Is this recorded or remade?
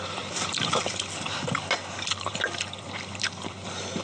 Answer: recorded